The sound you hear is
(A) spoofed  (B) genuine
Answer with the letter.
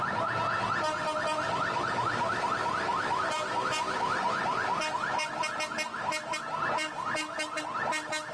B